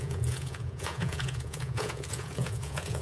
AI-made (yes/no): yes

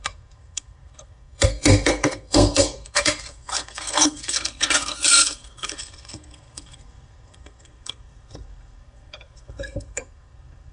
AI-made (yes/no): yes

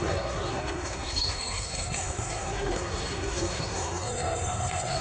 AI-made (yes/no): yes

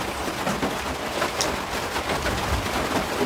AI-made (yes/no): no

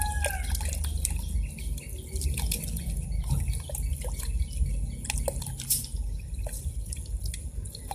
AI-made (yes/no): no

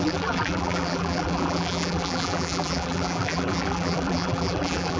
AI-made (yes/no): yes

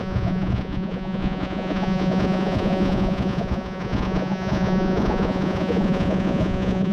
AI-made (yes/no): yes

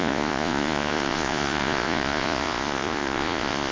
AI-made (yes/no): yes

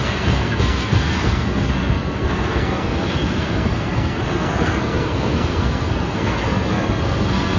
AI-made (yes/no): yes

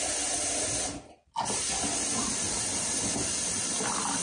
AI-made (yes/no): no